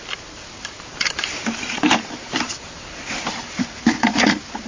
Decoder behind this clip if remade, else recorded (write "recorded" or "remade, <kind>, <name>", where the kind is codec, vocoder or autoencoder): remade, vocoder, BigVGAN v2